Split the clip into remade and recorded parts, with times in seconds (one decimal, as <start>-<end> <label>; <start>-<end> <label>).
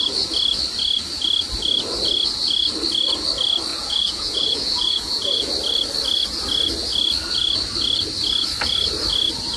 0.0-3.7 recorded; 3.7-5.5 remade; 5.5-9.6 recorded